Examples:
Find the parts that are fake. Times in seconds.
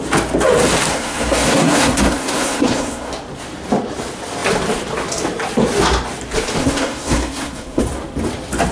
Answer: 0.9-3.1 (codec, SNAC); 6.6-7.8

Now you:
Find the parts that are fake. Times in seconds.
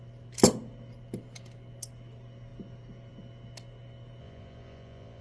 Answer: 4.2-5.2 (vocoder, Vocos)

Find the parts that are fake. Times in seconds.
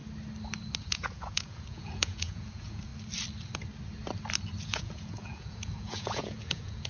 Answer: 0.8-2.9 (vocoder, Vocos); 4.6-6.9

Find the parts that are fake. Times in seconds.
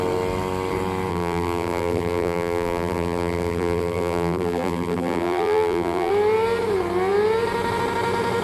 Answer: 1.1-6.1 (vocoder, BigVGAN v2)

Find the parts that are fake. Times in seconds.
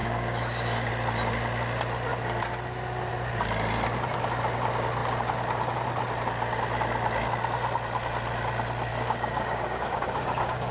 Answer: 0.0-0.9 (codec, DAC); 8.9-10.7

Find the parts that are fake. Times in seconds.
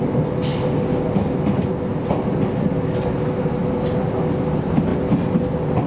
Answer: none